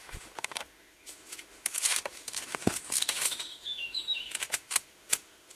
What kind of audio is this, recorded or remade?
remade